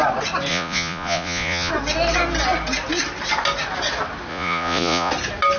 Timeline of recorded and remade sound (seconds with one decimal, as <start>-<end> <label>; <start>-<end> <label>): 0.0-0.5 recorded; 0.5-1.7 remade; 1.7-4.3 recorded; 4.3-5.1 remade; 5.1-5.6 recorded